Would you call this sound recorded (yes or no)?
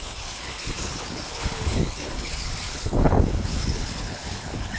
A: no